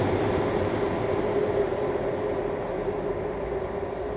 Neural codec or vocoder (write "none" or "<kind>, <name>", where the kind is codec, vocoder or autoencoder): none